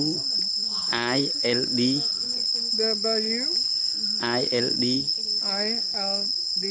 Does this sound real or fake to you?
real